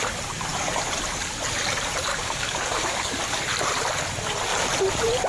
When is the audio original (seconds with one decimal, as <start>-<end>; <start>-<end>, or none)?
0.0-2.1; 3.2-5.3